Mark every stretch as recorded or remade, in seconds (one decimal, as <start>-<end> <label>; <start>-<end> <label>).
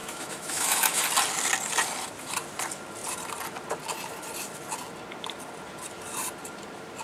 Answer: 0.0-1.0 remade; 1.0-7.0 recorded